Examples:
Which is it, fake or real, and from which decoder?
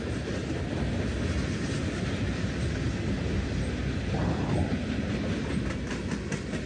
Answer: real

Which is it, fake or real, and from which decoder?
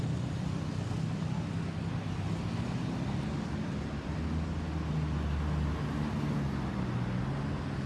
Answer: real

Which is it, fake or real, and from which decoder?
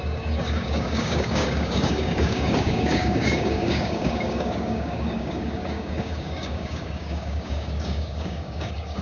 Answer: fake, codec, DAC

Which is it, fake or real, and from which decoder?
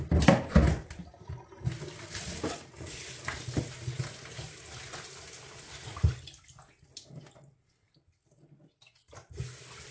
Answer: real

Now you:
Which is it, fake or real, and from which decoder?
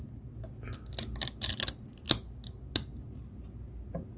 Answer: real